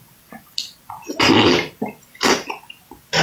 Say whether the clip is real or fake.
real